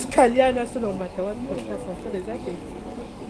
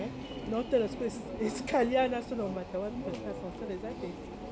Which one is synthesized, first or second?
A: first